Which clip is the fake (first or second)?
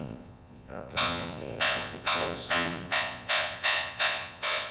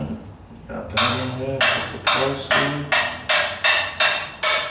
first